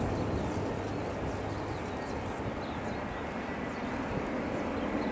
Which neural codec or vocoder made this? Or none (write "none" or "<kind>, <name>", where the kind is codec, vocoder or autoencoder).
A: none